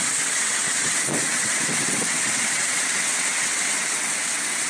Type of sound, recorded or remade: remade